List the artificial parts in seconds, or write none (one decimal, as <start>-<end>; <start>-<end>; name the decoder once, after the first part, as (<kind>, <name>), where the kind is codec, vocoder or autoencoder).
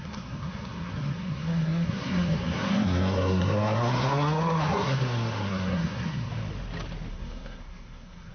0.0-6.3 (codec, SNAC); 7.1-8.3